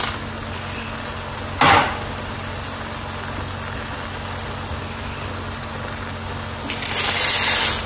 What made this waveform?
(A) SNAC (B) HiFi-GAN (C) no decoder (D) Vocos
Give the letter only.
C